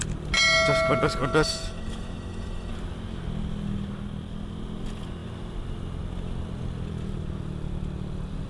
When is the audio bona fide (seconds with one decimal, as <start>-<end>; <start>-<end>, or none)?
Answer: 0.0-1.2; 2.7-8.5